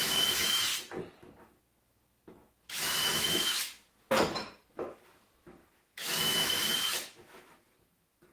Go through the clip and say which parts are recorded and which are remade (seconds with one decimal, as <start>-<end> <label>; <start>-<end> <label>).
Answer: 0.0-0.7 remade; 0.7-1.4 recorded; 1.4-8.3 remade